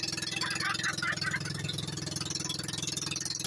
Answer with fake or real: real